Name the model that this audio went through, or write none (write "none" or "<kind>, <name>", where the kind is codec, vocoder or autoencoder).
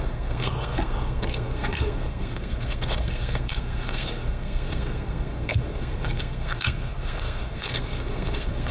codec, SNAC